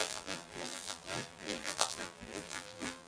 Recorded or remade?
remade